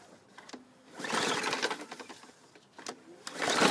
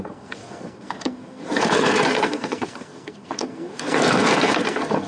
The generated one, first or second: second